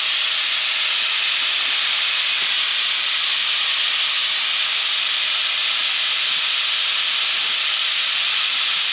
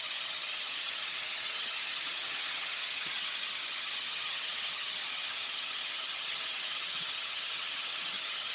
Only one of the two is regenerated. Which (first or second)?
second